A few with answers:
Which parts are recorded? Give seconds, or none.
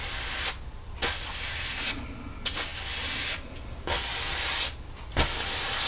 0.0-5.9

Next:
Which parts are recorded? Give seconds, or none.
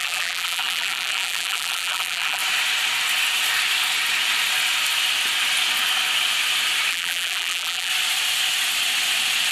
2.4-6.9; 7.9-9.5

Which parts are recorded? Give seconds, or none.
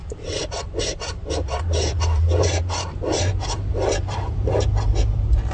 3.3-3.7; 4.6-5.5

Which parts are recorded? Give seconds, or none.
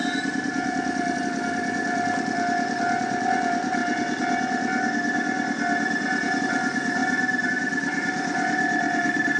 3.8-6.4; 7.0-7.5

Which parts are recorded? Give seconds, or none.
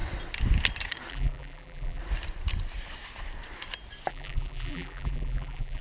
0.0-1.1; 2.0-4.1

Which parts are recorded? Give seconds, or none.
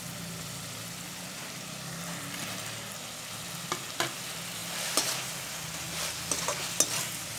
0.0-7.4